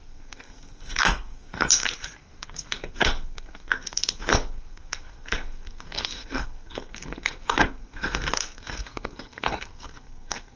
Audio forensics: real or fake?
fake